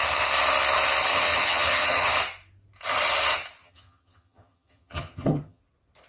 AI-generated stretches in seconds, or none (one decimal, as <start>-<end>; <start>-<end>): 1.1-2.1; 3.6-5.6